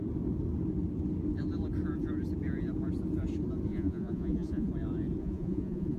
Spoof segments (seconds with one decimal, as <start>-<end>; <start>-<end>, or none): 3.7-4.7; 5.2-6.0